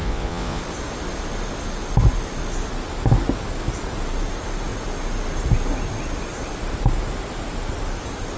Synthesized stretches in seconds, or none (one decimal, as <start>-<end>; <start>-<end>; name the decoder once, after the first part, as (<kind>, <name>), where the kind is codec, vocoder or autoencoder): 0.0-0.6 (vocoder, Vocos)